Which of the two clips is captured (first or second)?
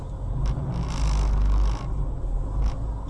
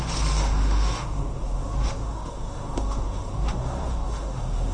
first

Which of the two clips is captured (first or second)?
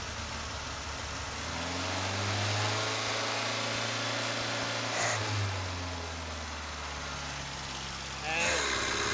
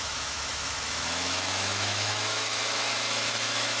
first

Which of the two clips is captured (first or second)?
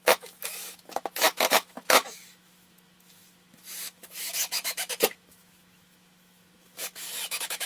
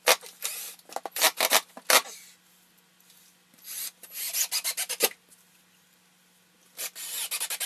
second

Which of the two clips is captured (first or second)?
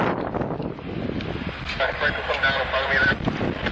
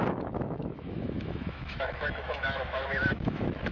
first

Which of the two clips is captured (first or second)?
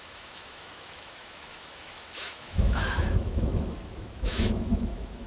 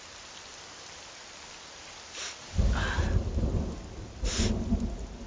second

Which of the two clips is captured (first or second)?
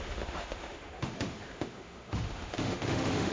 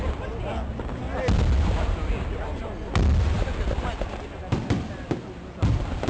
second